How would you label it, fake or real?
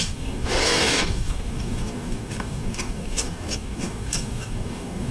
fake